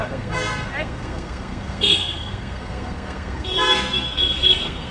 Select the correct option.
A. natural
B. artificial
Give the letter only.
B